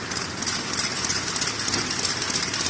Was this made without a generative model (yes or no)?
yes